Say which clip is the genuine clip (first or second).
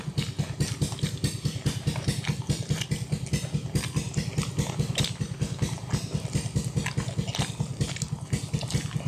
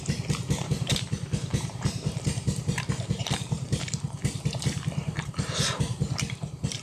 first